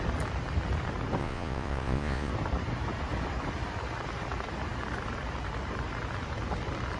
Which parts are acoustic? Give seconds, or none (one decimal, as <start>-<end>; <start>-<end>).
0.0-1.2; 2.3-7.0